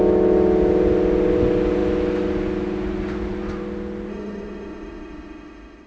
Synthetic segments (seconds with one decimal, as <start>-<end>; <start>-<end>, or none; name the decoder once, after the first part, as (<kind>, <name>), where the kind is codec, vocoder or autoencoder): 4.1-5.9 (autoencoder, DAC-VAE)